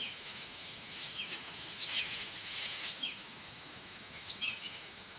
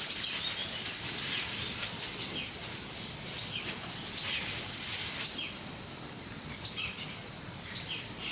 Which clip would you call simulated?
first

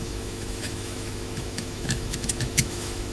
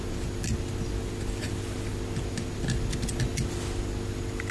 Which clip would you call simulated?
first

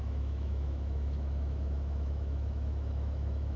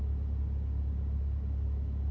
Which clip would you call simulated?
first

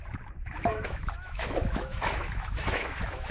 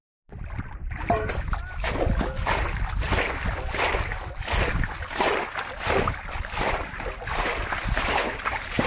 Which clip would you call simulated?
first